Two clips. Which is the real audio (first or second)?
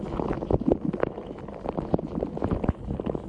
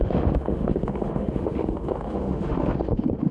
first